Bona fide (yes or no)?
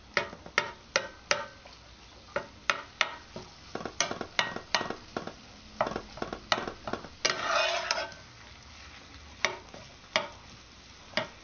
yes